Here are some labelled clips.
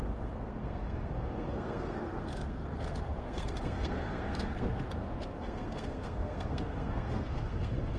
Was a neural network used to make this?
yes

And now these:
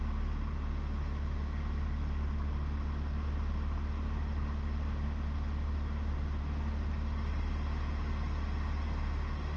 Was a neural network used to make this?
no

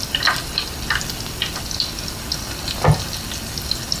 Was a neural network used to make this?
no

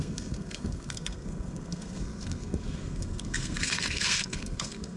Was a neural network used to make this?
yes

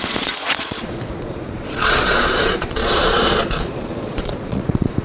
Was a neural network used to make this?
yes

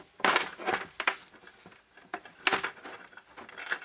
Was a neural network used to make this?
no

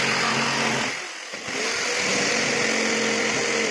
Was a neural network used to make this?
no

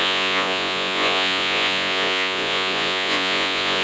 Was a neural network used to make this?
yes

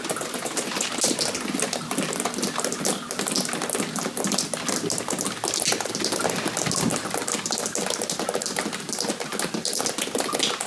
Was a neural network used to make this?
no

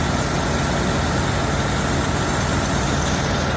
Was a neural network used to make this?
no